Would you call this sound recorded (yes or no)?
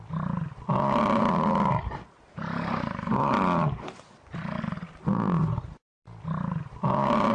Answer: yes